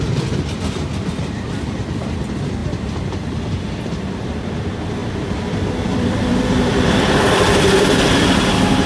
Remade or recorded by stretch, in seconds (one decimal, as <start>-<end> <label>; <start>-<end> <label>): 0.0-2.6 recorded; 2.6-4.5 remade; 4.5-5.0 recorded; 5.0-8.3 remade; 8.3-8.9 recorded